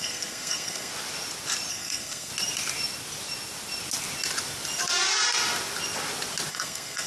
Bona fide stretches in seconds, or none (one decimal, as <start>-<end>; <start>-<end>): 0.9-1.7; 2.3-6.5